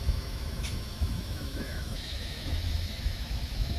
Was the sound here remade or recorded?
remade